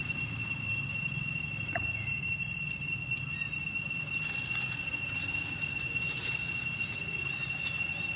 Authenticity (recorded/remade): recorded